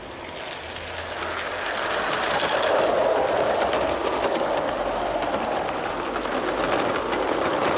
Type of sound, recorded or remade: recorded